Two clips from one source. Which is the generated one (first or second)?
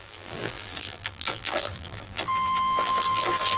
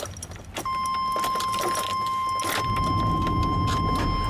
first